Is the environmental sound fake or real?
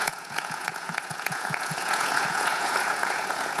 fake